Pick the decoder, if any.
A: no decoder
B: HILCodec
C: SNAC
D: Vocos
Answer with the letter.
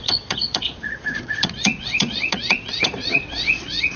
D